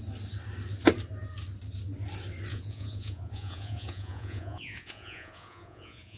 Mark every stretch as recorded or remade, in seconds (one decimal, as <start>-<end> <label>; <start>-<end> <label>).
0.0-2.5 recorded; 2.5-6.2 remade